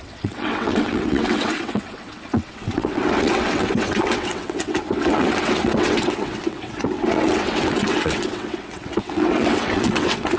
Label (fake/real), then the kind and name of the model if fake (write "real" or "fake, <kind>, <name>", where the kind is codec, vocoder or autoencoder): fake, vocoder, WaveNeXt